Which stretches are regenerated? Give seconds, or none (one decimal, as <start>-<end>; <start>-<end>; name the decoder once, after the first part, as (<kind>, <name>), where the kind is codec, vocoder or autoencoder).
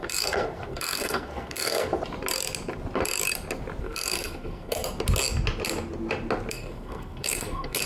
0.0-1.9 (codec, SNAC); 3.8-4.8; 6.5-7.9